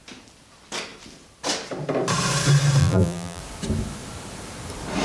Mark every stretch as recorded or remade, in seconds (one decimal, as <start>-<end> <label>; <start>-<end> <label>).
0.0-2.8 recorded; 2.8-3.4 remade; 3.4-5.0 recorded